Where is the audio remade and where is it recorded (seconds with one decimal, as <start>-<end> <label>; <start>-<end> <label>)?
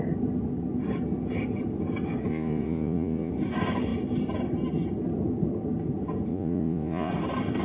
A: 0.0-2.3 recorded; 2.3-3.3 remade; 3.3-6.3 recorded; 6.3-7.1 remade; 7.1-7.6 recorded